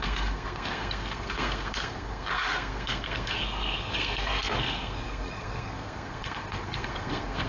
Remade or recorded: remade